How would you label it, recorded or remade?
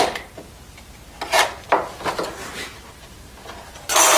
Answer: recorded